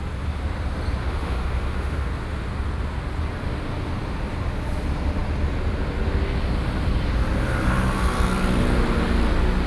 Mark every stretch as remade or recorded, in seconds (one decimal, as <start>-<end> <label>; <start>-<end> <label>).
0.0-1.0 recorded; 1.0-2.1 remade; 2.1-9.7 recorded

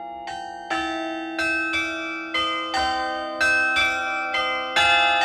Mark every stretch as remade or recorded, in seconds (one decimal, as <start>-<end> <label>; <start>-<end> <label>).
0.0-3.8 recorded; 3.8-4.4 remade; 4.4-5.2 recorded

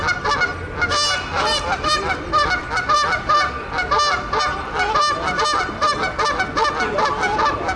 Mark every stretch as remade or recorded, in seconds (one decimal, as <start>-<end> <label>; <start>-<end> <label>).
0.0-7.8 recorded